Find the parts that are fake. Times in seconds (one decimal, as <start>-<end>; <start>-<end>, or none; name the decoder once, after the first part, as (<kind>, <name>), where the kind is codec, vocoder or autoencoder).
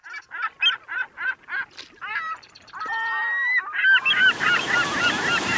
none